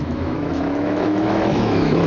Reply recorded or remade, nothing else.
remade